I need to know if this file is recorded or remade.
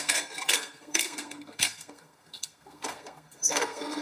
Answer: remade